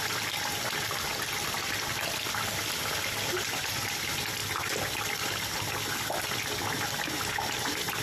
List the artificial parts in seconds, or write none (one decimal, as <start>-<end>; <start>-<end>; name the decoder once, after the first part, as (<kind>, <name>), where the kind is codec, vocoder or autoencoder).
none